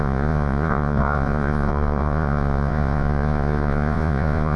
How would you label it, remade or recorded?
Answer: remade